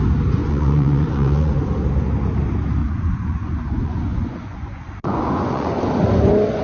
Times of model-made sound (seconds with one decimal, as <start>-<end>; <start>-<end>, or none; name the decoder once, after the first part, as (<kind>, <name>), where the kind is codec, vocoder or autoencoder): 0.4-1.5 (vocoder, Vocos); 2.8-5.8